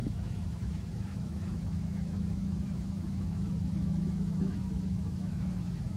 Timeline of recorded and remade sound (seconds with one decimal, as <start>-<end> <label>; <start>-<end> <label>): 0.0-6.0 remade